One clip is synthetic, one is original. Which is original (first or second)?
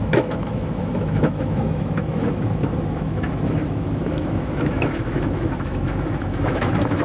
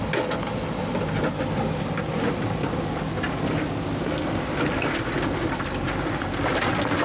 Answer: second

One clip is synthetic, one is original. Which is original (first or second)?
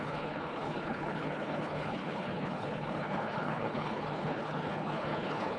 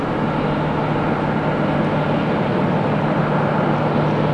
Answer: second